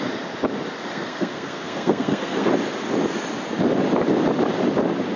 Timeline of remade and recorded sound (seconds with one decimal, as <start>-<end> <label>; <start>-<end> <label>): 0.0-0.9 recorded; 0.9-2.5 remade; 2.5-5.2 recorded